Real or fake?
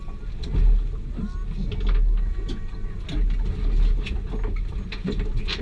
real